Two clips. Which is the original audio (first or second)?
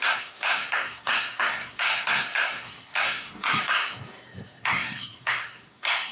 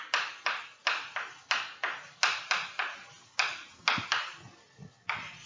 second